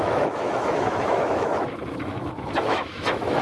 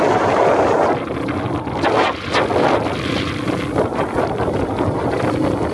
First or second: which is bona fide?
second